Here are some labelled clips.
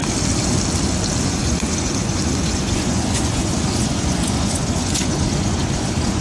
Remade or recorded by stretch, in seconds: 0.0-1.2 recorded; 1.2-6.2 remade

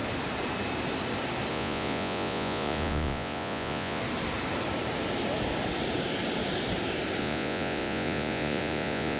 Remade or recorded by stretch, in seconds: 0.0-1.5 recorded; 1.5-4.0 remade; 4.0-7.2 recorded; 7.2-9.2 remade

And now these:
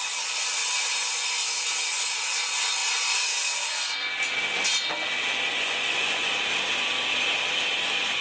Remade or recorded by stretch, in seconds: 0.0-5.5 recorded; 5.5-6.3 remade; 6.3-8.2 recorded

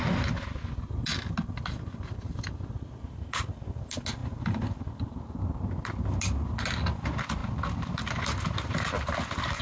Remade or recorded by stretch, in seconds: 0.0-9.6 recorded

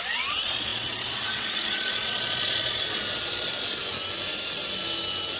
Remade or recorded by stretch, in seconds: 0.0-3.8 remade; 3.8-5.4 recorded